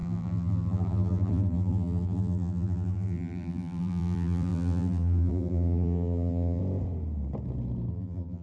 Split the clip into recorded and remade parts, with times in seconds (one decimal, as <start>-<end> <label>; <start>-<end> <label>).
0.0-6.6 remade; 6.6-7.9 recorded; 7.9-8.4 remade